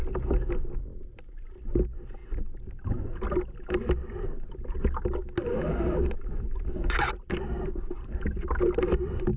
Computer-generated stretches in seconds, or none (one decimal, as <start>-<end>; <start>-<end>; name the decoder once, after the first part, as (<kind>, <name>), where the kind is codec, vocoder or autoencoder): none